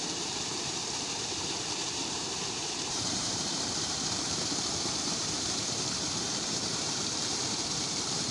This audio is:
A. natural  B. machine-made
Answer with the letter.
B